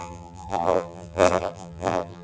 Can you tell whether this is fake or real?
fake